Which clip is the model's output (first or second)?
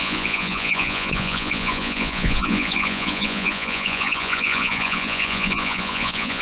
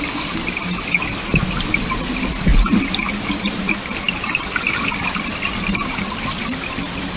first